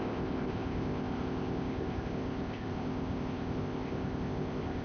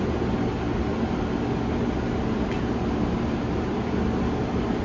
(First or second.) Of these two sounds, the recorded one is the second